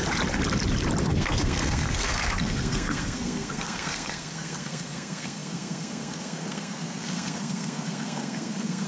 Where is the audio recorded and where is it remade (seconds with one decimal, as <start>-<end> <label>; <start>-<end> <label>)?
0.0-1.0 recorded; 1.0-8.9 remade